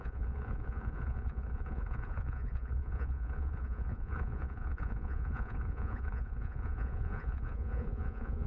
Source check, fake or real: fake